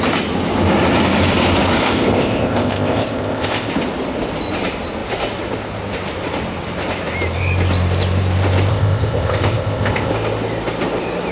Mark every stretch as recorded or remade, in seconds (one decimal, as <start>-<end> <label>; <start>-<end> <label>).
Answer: 0.0-1.8 recorded; 1.8-3.7 remade; 3.7-8.7 recorded; 8.7-10.1 remade; 10.1-11.3 recorded